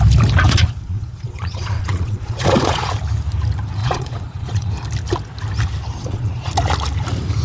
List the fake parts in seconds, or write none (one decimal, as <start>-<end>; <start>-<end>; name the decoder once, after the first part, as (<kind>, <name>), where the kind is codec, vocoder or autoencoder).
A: 0.6-2.9 (vocoder, Vocos); 3.8-4.7; 6.0-6.5

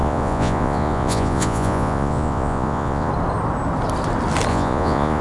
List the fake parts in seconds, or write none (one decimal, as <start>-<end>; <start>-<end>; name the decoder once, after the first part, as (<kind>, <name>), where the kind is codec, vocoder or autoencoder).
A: 0.0-3.1 (vocoder, Vocos); 4.5-5.2

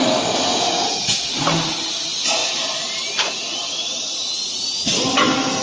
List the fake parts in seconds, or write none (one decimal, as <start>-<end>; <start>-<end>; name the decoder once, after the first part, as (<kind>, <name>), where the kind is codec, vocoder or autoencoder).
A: 0.5-1.3 (vocoder, Vocos)

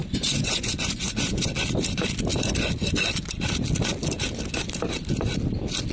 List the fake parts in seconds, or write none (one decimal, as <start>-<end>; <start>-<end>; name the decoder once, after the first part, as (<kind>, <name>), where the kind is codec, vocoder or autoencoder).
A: 0.0-1.5 (vocoder, Vocos)

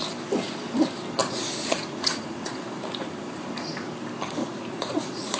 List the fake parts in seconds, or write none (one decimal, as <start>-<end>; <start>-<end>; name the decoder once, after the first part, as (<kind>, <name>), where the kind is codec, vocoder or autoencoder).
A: 1.2-3.1 (vocoder, Vocos); 4.4-5.4